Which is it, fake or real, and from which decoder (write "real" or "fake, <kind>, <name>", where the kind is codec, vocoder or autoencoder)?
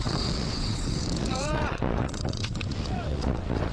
fake, vocoder, WaveNeXt